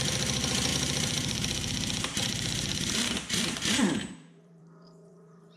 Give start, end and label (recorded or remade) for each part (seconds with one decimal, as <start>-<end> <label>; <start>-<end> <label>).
0.0-5.6 remade